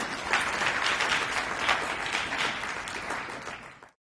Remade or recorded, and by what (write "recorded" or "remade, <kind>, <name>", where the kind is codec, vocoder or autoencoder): recorded